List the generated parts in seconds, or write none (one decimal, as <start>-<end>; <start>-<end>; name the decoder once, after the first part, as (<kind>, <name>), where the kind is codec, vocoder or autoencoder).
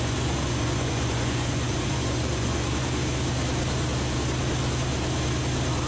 0.0-3.0 (vocoder, Vocos)